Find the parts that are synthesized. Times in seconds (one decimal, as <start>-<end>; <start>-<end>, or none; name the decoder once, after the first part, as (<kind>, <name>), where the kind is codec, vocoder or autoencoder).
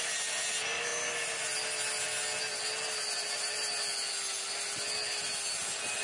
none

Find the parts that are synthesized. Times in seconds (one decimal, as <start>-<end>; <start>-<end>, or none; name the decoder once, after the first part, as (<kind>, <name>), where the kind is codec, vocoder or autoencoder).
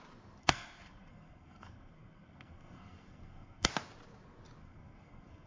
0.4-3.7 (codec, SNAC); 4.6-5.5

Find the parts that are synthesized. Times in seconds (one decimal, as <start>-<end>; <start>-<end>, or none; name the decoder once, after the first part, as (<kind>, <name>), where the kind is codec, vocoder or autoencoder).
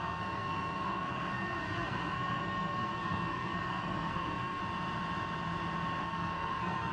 0.0-4.6 (codec, SNAC); 6.0-6.9